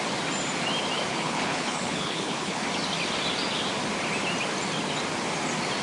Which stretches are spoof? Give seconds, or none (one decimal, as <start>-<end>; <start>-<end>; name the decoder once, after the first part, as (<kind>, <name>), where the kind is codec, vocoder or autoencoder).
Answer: 1.1-2.6 (codec, HILCodec)